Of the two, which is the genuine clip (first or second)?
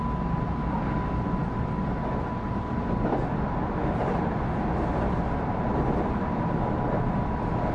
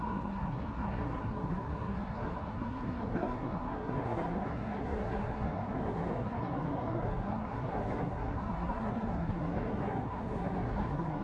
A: first